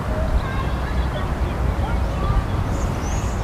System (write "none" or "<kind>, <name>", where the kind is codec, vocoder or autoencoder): none